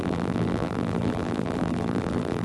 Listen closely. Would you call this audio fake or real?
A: fake